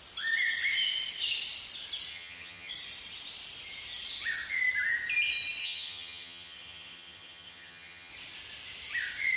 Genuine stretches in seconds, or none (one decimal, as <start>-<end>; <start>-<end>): 0.0-2.1; 2.7-5.6; 8.1-9.4